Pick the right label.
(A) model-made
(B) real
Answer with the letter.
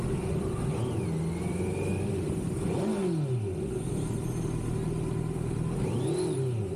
B